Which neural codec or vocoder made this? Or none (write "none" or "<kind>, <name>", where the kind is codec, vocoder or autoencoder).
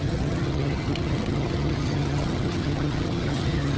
vocoder, HiFi-GAN